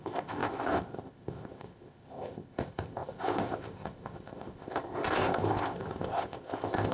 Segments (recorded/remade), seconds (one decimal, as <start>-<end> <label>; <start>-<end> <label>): 0.0-6.9 remade